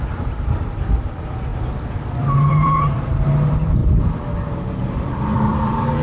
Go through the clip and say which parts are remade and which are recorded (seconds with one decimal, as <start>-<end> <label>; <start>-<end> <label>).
0.0-3.8 remade; 3.8-5.0 recorded; 5.0-6.0 remade